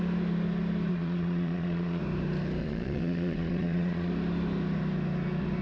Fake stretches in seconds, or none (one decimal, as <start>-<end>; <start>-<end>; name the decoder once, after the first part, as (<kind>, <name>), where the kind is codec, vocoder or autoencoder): 0.9-2.0 (vocoder, Vocos); 2.6-4.1